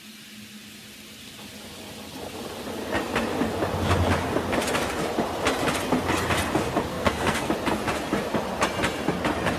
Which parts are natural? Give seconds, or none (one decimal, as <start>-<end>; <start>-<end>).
0.0-6.9; 7.5-9.6